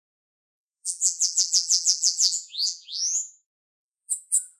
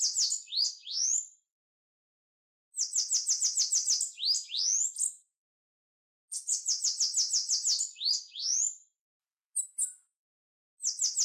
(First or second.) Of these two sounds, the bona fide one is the second